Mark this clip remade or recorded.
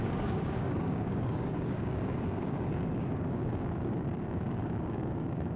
remade